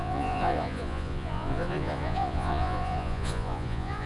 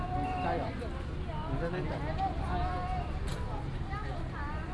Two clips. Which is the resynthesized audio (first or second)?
first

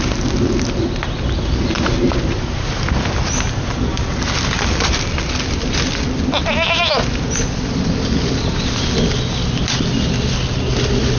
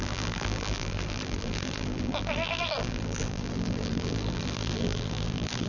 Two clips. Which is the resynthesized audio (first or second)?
second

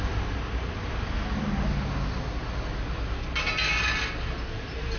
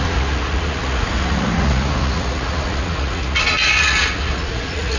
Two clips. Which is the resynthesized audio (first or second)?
second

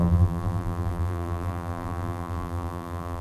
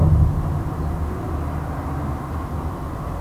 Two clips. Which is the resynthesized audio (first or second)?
first